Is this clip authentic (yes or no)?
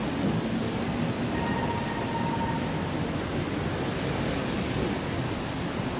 yes